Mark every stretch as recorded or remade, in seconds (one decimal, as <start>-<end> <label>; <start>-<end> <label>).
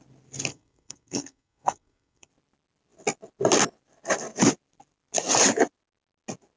0.0-0.5 recorded; 0.5-2.3 remade; 2.3-6.6 recorded